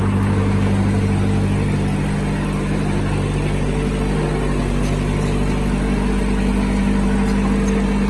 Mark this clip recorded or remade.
recorded